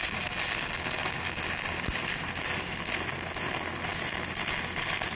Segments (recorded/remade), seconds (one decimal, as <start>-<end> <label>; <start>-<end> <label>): 0.0-5.2 recorded